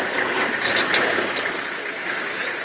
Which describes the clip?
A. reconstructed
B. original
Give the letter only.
B